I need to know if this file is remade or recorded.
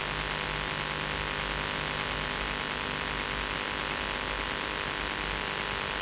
recorded